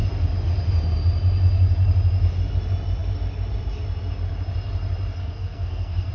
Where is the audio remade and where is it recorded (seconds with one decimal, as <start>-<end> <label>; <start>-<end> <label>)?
0.0-5.2 recorded; 5.2-6.1 remade